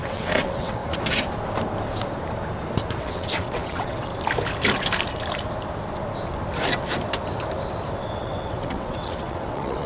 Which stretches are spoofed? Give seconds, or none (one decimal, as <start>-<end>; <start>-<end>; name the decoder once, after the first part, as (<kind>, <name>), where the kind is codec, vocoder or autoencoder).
0.0-0.8 (vocoder, WaveNeXt); 3.0-4.1; 8.1-9.9